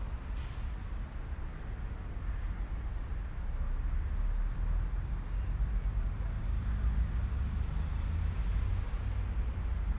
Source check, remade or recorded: recorded